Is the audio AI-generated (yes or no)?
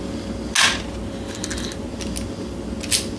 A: no